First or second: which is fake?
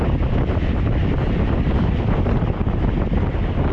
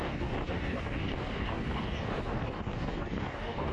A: second